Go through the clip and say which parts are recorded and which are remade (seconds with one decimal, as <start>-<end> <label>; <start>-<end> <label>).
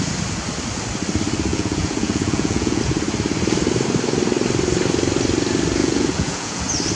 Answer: 0.0-1.5 recorded; 1.5-2.8 remade; 2.8-5.8 recorded; 5.8-6.6 remade; 6.6-7.0 recorded